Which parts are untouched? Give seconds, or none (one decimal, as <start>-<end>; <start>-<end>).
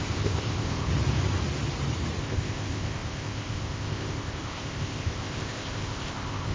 0.9-2.2